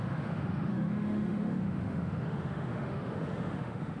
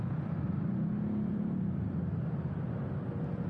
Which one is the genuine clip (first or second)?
second